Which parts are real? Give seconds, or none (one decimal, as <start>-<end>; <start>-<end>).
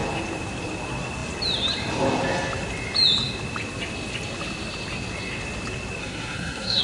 0.0-6.0